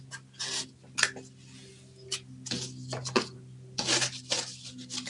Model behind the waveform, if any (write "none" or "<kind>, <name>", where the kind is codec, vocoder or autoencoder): none